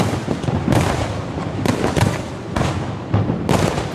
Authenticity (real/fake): real